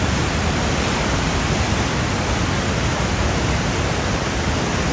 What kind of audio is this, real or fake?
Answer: real